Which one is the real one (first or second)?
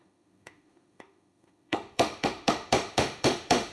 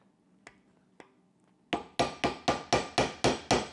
second